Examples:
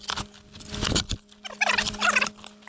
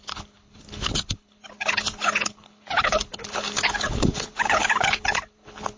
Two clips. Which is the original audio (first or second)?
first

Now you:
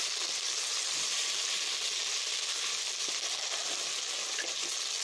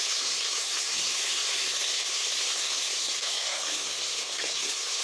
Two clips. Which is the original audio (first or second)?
first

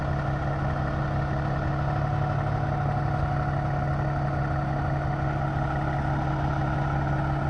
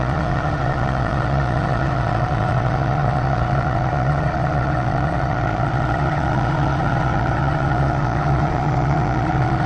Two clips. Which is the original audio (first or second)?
first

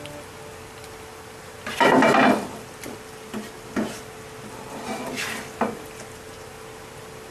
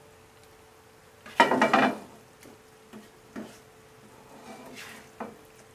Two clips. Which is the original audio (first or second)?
second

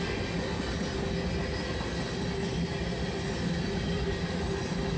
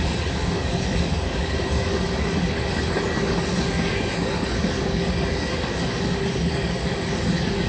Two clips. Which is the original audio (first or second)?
first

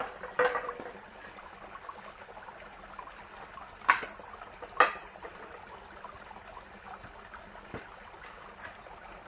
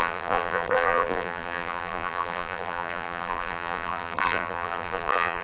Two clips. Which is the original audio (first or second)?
first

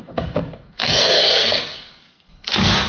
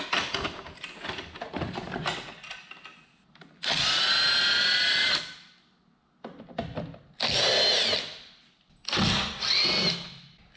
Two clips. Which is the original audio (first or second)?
second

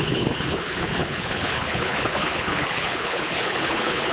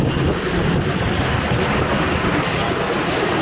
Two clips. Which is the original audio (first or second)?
second